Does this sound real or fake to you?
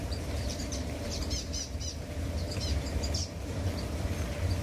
fake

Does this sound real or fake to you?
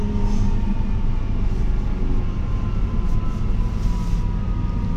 real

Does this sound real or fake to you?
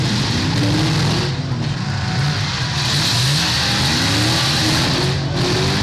real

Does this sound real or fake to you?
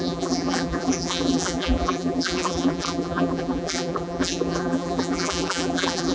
fake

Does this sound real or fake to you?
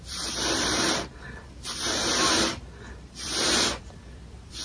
fake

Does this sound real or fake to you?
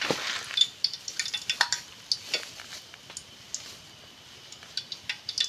real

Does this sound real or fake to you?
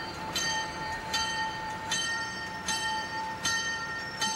fake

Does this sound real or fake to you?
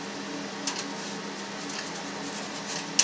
real